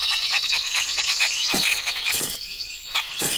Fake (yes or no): yes